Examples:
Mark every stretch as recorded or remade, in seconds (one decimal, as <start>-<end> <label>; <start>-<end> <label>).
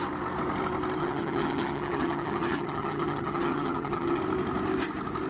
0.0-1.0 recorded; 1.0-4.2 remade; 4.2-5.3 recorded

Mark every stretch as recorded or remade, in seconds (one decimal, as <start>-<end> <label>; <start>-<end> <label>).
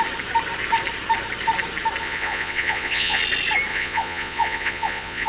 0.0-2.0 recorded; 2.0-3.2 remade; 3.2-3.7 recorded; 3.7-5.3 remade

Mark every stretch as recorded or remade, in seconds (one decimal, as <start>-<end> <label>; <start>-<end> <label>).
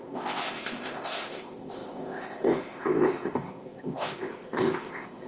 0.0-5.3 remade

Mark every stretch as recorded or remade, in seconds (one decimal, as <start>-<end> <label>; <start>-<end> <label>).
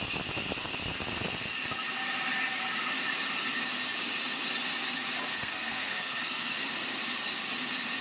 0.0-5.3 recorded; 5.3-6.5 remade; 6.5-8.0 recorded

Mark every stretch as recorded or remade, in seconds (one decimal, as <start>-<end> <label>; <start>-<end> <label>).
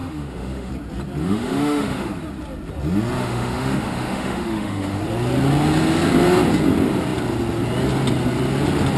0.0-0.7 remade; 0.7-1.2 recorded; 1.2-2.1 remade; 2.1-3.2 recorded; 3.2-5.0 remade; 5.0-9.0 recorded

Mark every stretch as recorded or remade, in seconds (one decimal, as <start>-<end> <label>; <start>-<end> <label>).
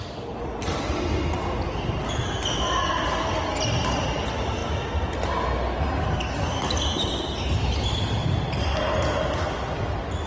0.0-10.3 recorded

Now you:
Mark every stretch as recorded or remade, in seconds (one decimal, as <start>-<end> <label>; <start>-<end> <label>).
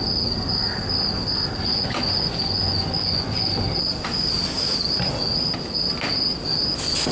0.0-1.7 recorded; 1.7-3.5 remade; 3.5-7.1 recorded